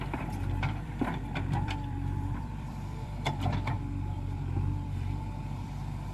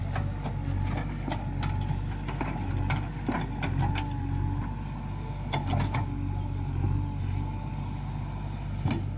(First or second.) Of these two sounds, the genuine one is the second